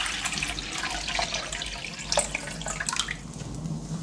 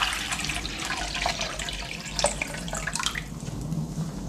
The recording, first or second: first